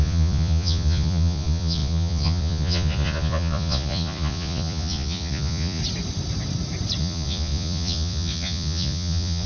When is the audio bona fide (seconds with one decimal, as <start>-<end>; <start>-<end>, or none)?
5.8-7.0